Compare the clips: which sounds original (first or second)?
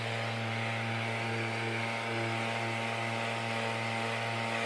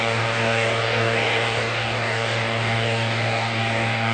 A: first